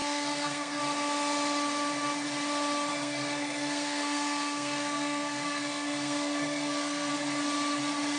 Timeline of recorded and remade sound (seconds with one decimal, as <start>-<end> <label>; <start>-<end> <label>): 0.0-0.8 remade; 0.8-2.9 recorded; 2.9-7.1 remade; 7.1-8.2 recorded